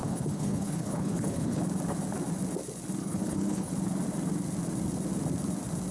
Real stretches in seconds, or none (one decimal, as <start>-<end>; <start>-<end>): 1.6-3.0; 3.7-5.9